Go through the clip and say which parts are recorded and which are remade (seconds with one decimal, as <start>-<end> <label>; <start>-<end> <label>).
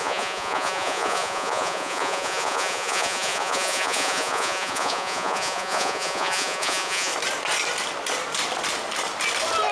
0.0-7.1 remade; 7.1-9.7 recorded